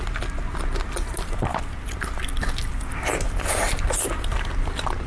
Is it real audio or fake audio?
real